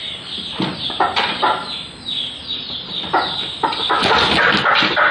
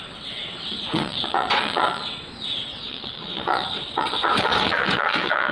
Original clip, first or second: first